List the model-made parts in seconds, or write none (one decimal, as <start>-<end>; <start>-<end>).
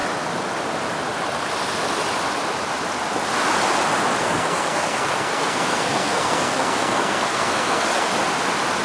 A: 4.2-8.1